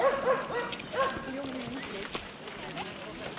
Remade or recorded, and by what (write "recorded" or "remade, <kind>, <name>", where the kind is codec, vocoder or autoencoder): remade, vocoder, BigVGAN v2